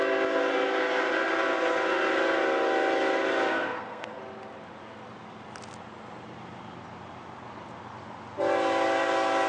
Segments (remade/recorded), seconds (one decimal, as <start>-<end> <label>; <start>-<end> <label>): 0.0-3.5 recorded; 3.5-4.2 remade; 4.2-9.5 recorded